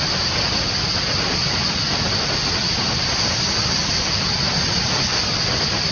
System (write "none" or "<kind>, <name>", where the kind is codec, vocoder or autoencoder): none